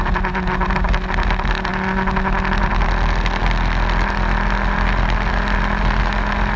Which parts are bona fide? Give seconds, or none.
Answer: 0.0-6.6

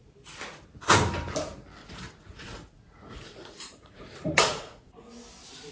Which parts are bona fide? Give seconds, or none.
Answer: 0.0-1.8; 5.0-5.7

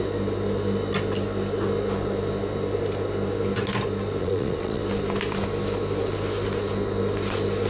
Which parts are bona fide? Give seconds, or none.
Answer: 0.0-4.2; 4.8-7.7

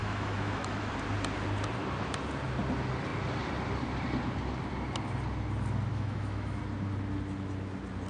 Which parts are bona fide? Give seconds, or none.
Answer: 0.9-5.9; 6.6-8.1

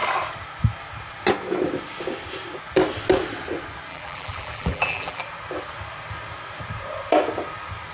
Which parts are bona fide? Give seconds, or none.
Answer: 0.0-3.9; 5.2-7.9